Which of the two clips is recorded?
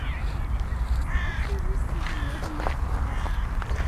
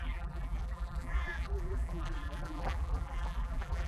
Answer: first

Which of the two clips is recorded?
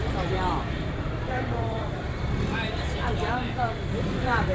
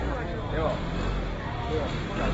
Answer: second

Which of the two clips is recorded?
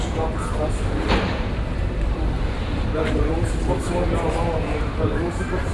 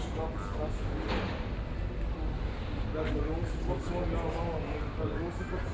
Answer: second